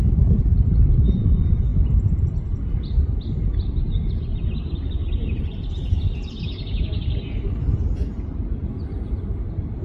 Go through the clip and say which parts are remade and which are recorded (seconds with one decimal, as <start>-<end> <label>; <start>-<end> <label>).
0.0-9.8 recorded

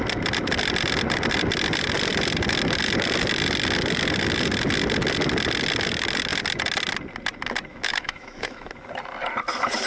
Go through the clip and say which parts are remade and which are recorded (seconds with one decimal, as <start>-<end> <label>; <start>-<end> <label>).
0.0-7.7 recorded; 7.7-8.7 remade; 8.7-9.9 recorded

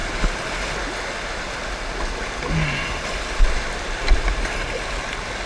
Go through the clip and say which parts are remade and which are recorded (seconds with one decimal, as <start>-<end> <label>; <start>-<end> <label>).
0.0-0.5 remade; 0.5-5.5 recorded

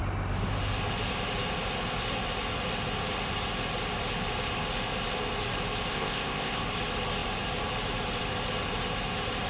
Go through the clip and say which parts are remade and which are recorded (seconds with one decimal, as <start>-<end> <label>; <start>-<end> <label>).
0.0-5.9 recorded; 5.9-6.6 remade; 6.6-9.5 recorded